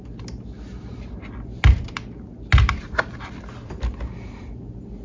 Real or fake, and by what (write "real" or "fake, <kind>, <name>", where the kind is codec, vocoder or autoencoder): real